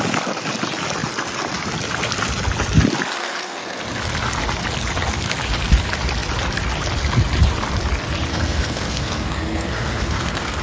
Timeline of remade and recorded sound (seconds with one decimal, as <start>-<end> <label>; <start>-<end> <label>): 0.0-3.2 recorded; 3.2-3.8 remade; 3.8-8.3 recorded; 8.3-10.6 remade

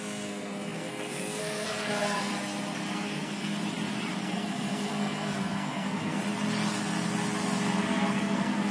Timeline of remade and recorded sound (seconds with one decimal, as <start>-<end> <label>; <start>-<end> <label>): 0.0-2.3 remade; 2.3-2.9 recorded; 2.9-3.5 remade; 3.5-4.2 recorded; 4.2-6.2 remade; 6.2-7.8 recorded; 7.8-8.7 remade

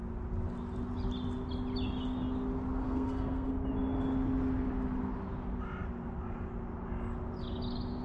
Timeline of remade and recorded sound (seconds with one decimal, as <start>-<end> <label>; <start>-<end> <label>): 0.0-2.8 recorded; 2.8-3.5 remade; 3.5-8.0 recorded

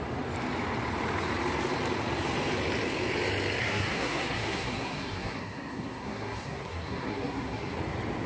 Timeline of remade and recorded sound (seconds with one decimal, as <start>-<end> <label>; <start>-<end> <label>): 0.0-3.6 recorded; 3.6-7.8 remade; 7.8-8.3 recorded